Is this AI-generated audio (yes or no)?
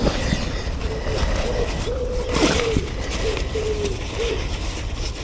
no